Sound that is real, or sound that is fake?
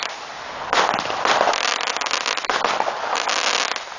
real